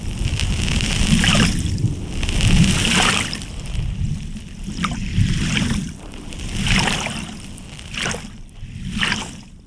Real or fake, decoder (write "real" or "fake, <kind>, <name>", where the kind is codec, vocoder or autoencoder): real